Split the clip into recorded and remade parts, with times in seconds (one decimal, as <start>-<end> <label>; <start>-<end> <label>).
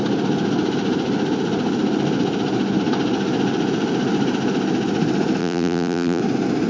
0.0-5.4 recorded; 5.4-6.2 remade; 6.2-6.7 recorded